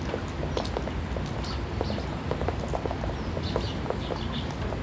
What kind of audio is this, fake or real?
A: real